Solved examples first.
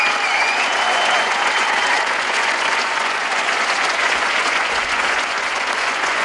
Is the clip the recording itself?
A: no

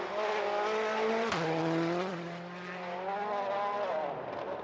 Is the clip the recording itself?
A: yes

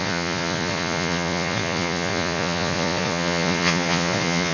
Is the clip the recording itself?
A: no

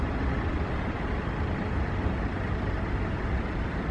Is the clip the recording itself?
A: yes